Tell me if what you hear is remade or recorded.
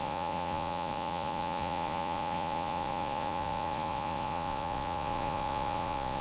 remade